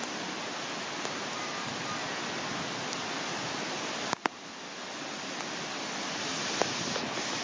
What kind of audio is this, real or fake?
real